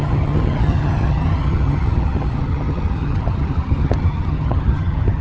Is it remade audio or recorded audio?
remade